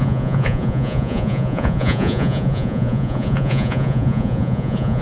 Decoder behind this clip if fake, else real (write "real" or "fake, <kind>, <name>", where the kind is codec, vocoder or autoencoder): fake, vocoder, Vocos